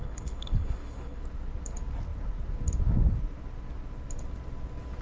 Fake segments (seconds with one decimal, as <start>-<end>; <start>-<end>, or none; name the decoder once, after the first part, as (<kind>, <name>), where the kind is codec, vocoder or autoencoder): 0.0-1.2 (codec, HILCodec)